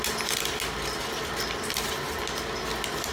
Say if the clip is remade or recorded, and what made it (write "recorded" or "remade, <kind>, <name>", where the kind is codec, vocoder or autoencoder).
recorded